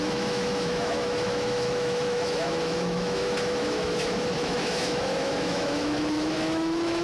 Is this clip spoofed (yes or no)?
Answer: yes